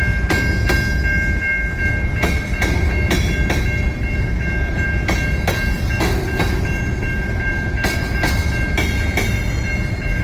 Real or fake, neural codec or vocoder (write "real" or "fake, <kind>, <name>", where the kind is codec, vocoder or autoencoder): real